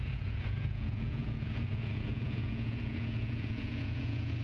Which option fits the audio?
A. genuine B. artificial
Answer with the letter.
B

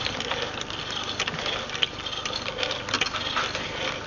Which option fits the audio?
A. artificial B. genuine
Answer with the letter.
B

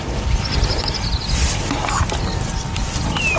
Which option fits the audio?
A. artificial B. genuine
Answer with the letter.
B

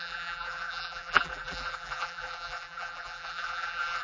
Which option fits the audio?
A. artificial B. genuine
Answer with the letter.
A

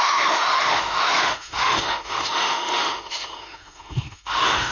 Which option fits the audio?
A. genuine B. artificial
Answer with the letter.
B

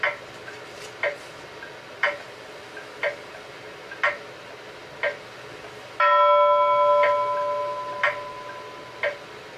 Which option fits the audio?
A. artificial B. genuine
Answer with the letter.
B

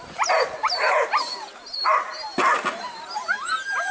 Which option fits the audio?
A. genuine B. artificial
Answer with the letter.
A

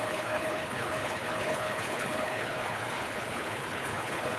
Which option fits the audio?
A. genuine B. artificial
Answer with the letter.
B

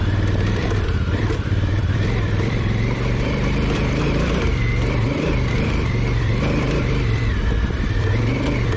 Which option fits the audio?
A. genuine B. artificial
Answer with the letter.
B